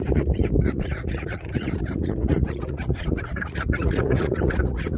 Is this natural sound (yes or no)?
no